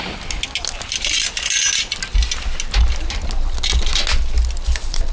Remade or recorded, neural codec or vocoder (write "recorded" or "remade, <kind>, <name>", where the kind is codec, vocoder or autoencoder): recorded